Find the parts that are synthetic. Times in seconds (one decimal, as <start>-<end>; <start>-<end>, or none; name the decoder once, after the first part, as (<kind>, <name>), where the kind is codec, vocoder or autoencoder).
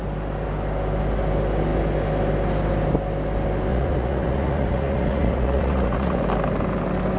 3.7-6.2 (vocoder, Vocos)